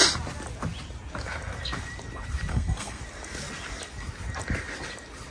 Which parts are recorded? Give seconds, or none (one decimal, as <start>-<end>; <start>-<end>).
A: 0.0-2.5; 3.0-5.3